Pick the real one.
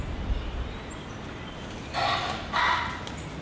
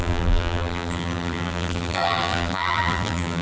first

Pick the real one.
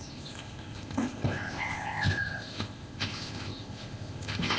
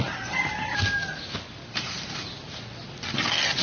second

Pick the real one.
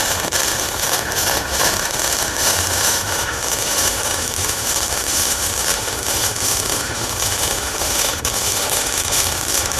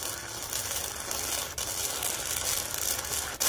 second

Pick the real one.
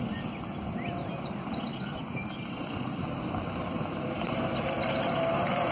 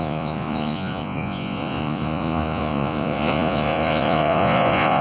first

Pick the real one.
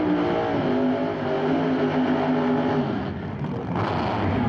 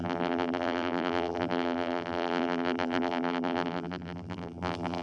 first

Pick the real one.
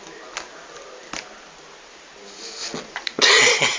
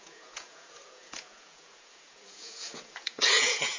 first